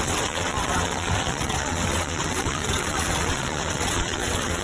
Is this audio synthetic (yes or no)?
yes